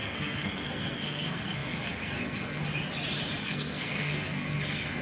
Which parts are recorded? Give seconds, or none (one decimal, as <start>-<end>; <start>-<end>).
2.6-3.4